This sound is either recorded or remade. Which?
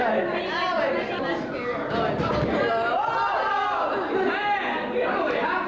recorded